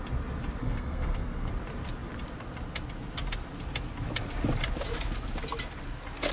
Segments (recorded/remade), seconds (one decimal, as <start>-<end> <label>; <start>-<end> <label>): 0.0-0.6 recorded; 0.6-1.5 remade; 1.5-6.3 recorded